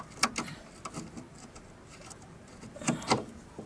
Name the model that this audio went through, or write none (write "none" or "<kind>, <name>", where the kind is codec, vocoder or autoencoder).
none